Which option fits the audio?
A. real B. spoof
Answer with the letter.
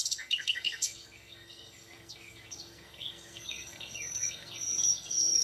B